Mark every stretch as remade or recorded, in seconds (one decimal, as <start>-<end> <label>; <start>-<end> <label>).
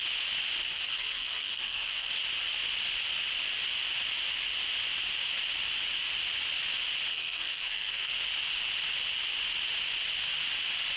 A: 0.0-0.6 recorded; 0.6-2.1 remade; 2.1-7.1 recorded; 7.1-8.1 remade; 8.1-11.0 recorded